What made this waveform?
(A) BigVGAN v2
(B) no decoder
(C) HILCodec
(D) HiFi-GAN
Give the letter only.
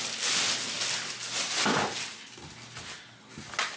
B